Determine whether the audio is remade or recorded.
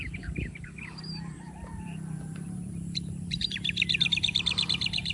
remade